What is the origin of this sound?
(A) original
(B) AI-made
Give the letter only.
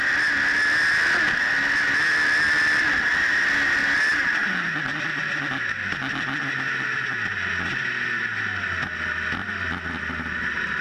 A